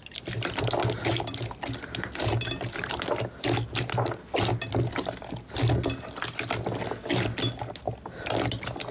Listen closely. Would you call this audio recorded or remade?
recorded